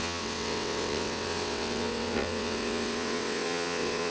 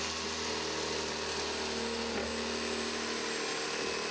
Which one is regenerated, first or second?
first